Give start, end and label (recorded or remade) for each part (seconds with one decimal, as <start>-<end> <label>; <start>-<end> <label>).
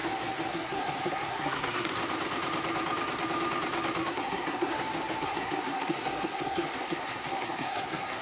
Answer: 0.0-0.5 recorded; 0.5-2.0 remade; 2.0-4.1 recorded; 4.1-4.7 remade; 4.7-5.2 recorded; 5.2-8.2 remade